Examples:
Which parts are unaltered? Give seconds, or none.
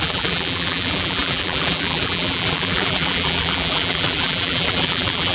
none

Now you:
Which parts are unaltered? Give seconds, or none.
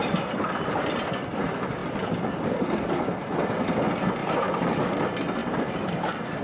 0.0-4.2; 4.8-5.4